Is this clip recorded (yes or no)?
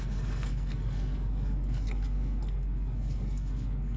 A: no